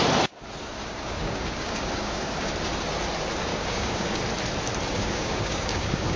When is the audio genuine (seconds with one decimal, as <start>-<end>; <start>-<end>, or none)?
0.0-0.8; 2.5-3.5; 4.2-4.9